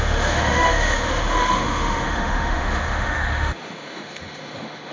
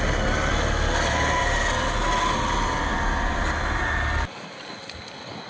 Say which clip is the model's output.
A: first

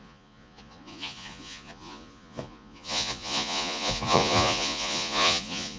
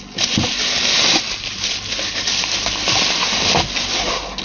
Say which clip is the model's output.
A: first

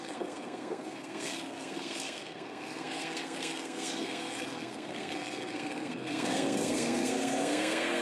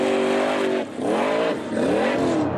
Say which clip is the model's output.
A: first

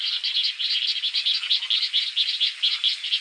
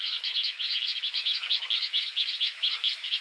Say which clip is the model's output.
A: second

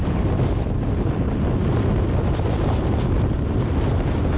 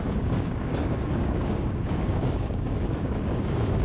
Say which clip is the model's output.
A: second